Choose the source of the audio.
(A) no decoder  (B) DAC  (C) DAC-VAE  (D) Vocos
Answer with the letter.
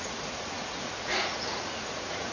D